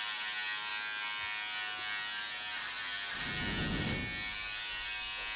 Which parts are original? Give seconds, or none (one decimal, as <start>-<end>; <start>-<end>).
0.0-5.4